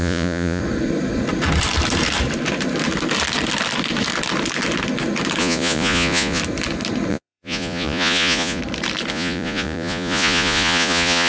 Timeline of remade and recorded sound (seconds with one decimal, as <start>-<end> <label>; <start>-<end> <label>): 0.0-0.6 remade; 0.6-5.4 recorded; 5.4-6.4 remade; 6.4-7.1 recorded; 7.1-8.6 remade; 8.6-9.1 recorded; 9.1-11.3 remade